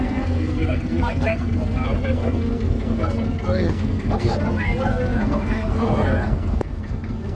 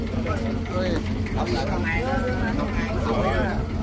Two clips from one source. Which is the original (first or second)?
second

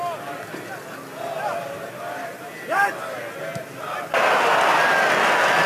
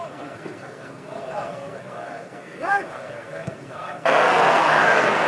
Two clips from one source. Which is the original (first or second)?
first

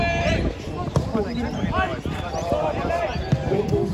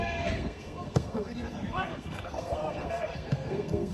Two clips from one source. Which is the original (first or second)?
first